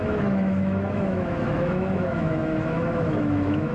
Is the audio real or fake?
fake